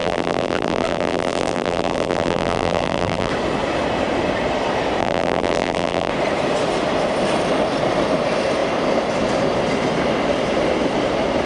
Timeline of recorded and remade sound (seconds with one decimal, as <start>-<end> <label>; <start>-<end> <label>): 0.0-3.3 remade; 3.3-5.0 recorded; 5.0-6.1 remade; 6.1-11.5 recorded